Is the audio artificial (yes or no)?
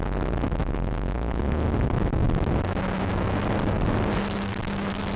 no